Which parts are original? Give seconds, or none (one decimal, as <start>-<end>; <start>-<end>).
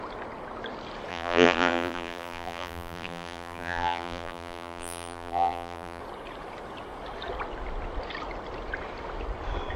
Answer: 0.0-1.1; 6.0-9.8